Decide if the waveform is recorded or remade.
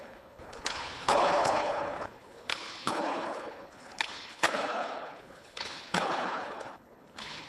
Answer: remade